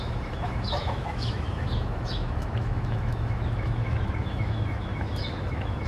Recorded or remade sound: remade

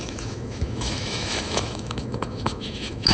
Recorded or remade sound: remade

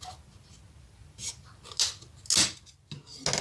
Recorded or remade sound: recorded